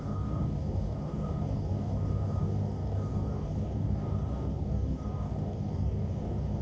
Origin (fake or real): fake